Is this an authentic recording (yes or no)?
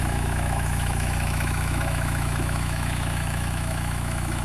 no